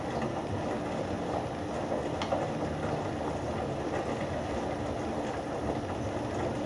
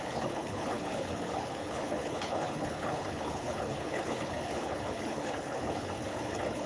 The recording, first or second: first